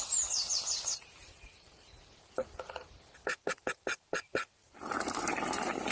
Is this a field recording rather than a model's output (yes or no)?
no